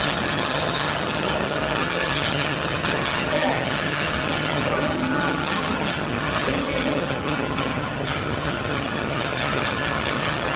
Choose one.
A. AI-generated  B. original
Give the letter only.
A